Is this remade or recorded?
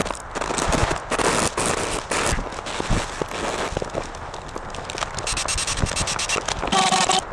recorded